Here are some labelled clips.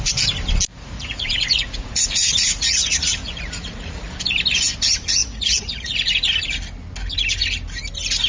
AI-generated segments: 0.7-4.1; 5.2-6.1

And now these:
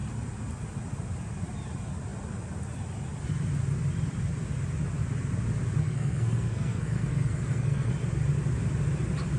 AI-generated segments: 5.8-7.9

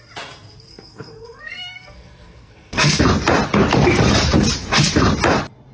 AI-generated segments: 0.7-3.0

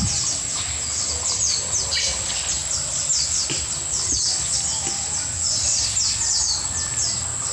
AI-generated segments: none

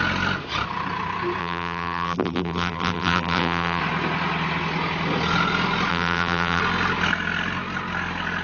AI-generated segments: 1.4-3.8; 5.9-6.6

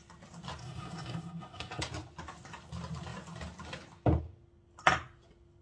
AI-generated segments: 0.6-1.8